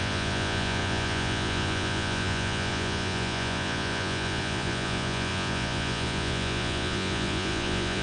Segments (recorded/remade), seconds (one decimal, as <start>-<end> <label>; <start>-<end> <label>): 0.0-8.0 remade